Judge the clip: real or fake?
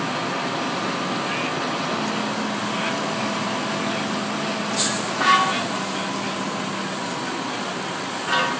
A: real